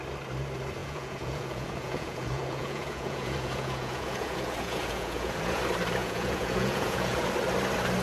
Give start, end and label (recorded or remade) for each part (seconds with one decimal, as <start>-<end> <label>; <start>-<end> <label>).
0.0-0.8 recorded; 0.8-5.6 remade; 5.6-6.0 recorded; 6.0-7.3 remade; 7.3-8.0 recorded